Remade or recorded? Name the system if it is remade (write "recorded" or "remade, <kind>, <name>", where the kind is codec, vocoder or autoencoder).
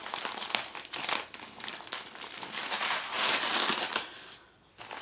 remade, vocoder, BigVGAN v2